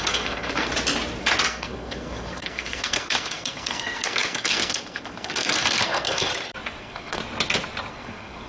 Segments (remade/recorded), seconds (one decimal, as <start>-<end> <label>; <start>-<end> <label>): 0.0-0.7 remade; 0.7-1.4 recorded; 1.4-6.3 remade; 6.3-6.8 recorded; 6.8-7.2 remade; 7.2-7.9 recorded; 7.9-8.5 remade